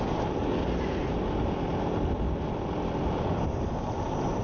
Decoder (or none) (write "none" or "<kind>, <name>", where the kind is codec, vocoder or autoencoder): none